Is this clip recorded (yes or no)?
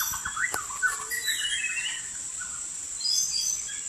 yes